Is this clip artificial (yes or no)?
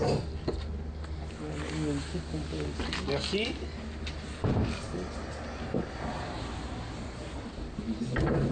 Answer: no